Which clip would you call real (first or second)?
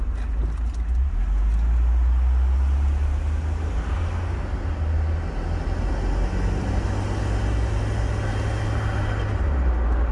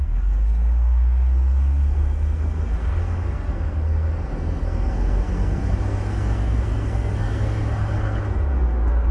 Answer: first